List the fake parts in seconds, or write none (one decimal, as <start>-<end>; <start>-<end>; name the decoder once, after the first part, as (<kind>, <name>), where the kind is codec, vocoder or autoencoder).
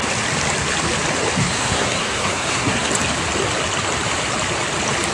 1.4-2.9 (codec, SNAC)